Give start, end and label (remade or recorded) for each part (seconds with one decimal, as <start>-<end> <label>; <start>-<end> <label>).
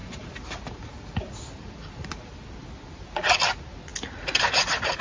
0.0-5.0 recorded